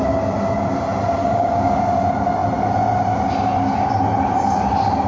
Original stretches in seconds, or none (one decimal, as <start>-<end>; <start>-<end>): 0.0-1.2; 1.8-5.1

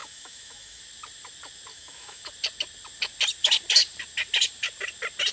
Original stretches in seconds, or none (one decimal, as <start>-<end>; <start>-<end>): 0.8-1.7; 2.3-5.3

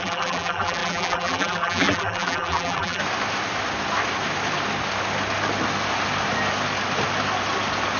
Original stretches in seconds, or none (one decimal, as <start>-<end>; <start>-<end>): 3.0-8.0

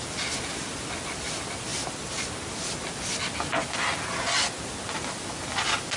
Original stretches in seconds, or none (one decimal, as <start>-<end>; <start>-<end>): 0.0-6.0

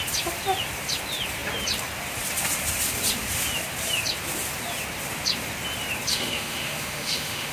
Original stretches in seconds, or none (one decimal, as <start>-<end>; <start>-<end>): 0.0-6.1

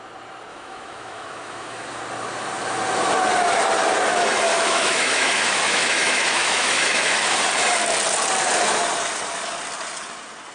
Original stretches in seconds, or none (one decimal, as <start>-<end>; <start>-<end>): 0.0-0.5; 2.0-4.5; 7.4-10.5